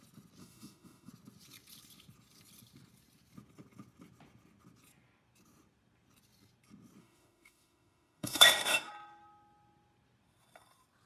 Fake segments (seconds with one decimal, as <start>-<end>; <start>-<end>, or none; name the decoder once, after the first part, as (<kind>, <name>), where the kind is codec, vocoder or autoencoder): 0.4-1.1 (autoencoder, DAC-VAE); 7.0-8.9

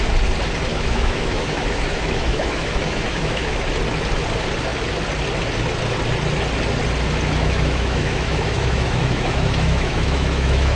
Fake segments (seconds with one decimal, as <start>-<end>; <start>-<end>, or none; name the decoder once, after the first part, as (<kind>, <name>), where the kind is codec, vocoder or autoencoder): 0.7-3.6 (autoencoder, DAC-VAE); 7.4-10.8